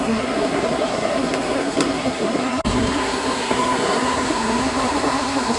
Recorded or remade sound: remade